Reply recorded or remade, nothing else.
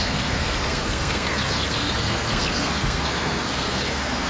remade